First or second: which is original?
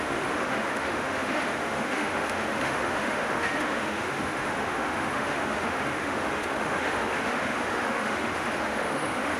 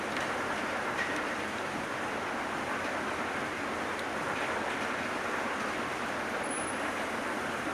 second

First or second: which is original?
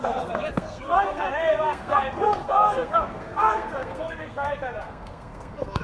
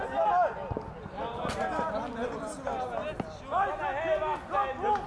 second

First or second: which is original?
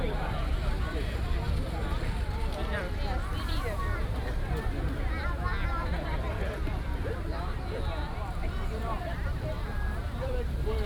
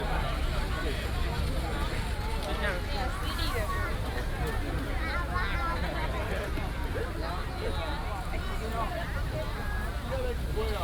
second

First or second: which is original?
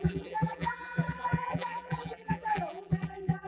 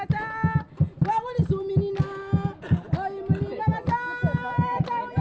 second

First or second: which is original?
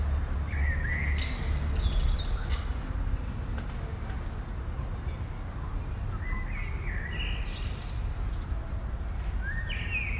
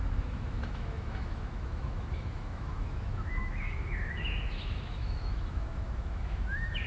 first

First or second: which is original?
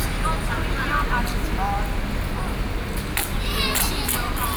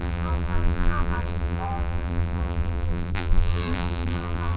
first